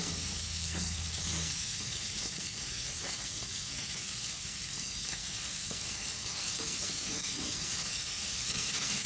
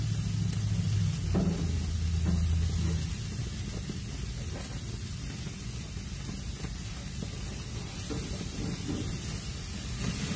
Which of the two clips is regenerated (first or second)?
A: first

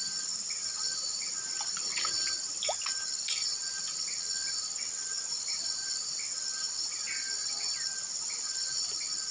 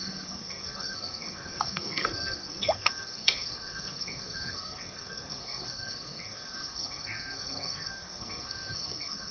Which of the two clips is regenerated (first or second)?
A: second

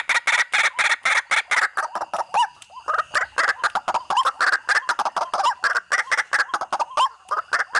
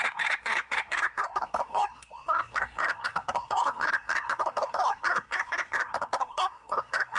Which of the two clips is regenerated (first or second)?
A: second